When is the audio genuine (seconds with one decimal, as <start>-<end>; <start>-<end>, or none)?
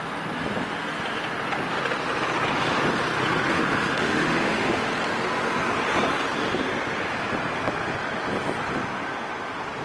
0.0-3.5; 4.9-9.8